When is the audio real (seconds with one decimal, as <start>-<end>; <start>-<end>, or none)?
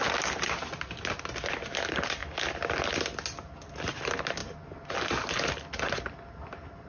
0.0-6.9